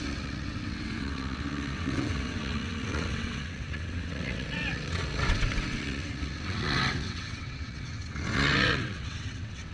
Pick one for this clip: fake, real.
fake